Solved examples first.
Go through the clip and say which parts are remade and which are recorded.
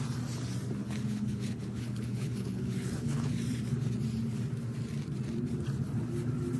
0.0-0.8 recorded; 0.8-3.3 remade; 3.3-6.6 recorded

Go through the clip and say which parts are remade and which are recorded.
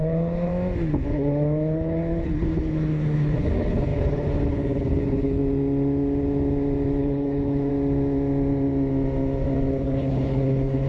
0.0-0.5 remade; 0.5-1.1 recorded; 1.1-5.4 remade; 5.4-7.0 recorded; 7.0-7.7 remade; 7.7-9.7 recorded; 9.7-10.9 remade